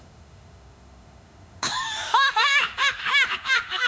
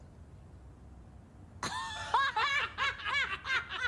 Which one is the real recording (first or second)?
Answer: second